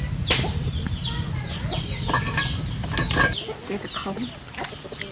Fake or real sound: real